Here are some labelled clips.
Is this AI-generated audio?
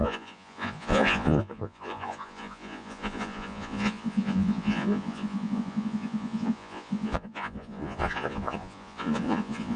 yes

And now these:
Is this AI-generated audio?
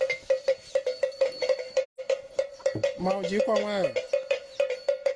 no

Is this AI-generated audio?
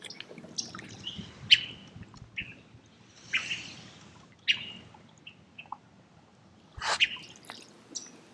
no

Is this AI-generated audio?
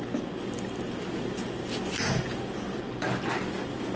no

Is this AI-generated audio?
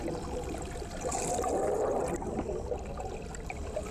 no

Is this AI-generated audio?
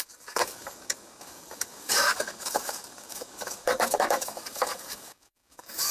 yes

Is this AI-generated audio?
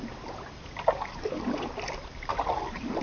no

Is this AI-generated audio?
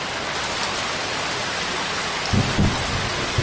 no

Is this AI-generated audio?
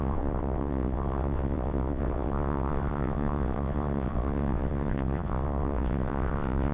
yes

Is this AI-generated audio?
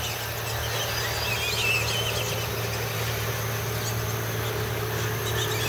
no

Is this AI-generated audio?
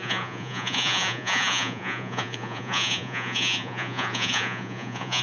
yes